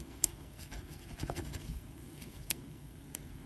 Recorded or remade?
remade